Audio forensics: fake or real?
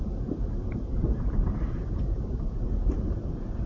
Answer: fake